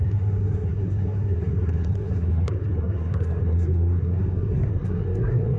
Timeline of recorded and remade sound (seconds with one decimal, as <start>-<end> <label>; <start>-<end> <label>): 0.0-5.6 remade